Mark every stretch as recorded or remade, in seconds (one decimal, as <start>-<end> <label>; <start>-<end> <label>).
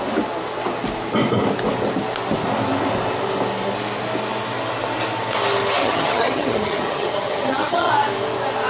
0.0-5.8 recorded; 5.8-7.9 remade; 7.9-8.7 recorded